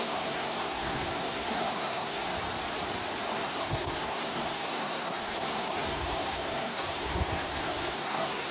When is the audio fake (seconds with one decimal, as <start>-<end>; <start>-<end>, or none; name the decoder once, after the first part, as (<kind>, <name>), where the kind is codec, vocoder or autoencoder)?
0.0-2.3 (codec, SNAC); 3.3-8.5